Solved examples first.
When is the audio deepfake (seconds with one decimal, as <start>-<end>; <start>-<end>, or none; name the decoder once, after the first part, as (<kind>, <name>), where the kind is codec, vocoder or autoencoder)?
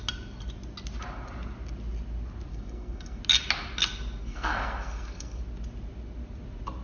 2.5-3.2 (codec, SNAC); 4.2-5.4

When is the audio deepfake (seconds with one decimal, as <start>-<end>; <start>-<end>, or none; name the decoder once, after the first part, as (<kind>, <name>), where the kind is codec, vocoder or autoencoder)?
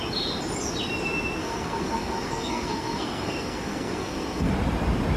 1.4-4.5 (codec, SNAC)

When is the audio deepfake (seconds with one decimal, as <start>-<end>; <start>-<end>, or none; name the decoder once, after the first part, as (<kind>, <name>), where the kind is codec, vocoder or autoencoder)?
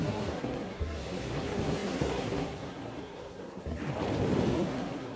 0.0-3.8 (codec, SNAC); 4.5-5.2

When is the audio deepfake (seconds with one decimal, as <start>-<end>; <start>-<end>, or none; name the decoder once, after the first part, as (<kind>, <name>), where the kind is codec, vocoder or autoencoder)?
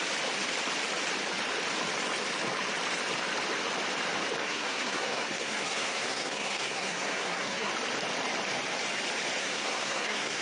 4.4-7.7 (codec, SNAC); 9.4-10.4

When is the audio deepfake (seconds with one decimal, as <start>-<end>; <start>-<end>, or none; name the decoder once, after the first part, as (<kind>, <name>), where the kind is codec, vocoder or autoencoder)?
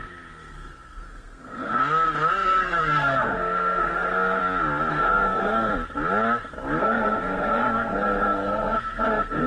0.0-1.8 (codec, SNAC); 2.3-4.4; 4.9-5.7; 6.8-9.5